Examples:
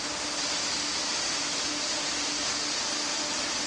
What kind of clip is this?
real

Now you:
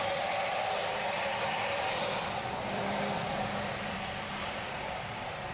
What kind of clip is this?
fake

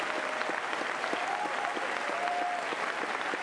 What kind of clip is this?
real